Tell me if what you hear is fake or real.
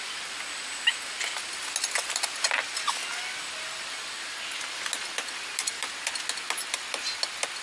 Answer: real